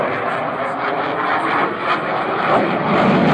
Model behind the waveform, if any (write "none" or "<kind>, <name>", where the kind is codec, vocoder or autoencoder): none